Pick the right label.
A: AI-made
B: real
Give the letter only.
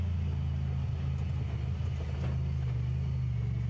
B